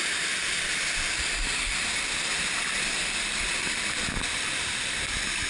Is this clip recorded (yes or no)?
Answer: yes